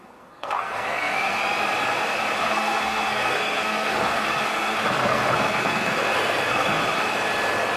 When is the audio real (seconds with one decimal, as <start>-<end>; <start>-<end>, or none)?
1.4-2.4; 6.8-7.8